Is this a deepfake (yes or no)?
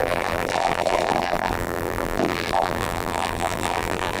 yes